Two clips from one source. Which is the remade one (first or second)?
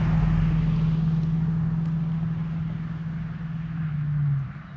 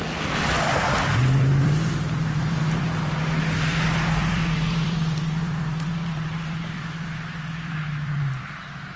second